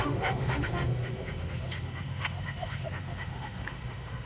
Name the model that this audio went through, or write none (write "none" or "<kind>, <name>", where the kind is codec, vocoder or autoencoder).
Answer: autoencoder, DAC-VAE